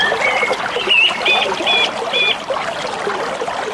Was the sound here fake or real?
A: fake